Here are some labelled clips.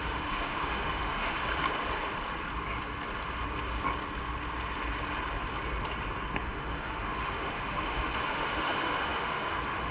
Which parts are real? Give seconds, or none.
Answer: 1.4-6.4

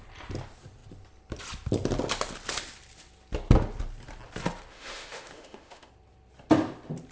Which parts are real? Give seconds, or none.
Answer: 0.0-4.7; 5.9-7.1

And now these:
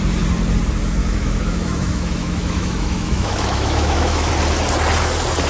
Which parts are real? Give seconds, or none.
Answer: 0.0-1.0; 4.3-5.5

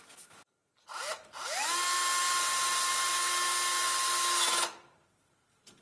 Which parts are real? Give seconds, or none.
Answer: 0.0-5.8

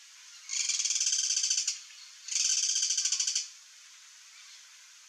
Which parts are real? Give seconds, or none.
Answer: 0.0-5.1

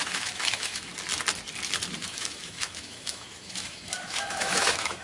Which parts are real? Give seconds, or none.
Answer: 0.9-2.0

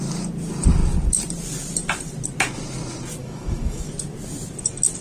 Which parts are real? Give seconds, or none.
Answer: 0.0-3.2; 3.9-5.0

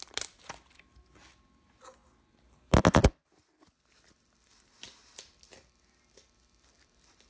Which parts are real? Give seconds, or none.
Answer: 0.0-7.3